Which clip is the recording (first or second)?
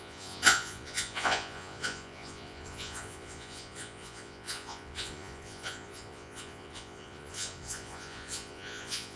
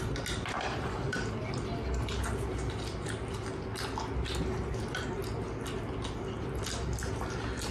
second